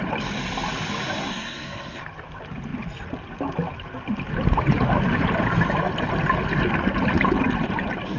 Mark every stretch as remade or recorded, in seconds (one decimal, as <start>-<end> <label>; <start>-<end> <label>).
0.0-1.2 recorded; 1.2-2.0 remade; 2.0-8.2 recorded